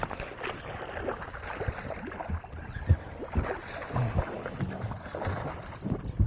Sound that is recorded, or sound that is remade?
recorded